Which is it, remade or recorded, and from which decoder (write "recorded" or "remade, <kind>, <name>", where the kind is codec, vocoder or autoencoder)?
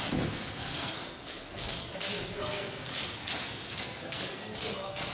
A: remade, codec, SNAC